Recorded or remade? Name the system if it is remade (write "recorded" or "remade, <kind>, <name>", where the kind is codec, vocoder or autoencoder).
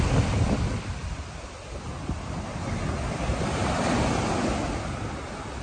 recorded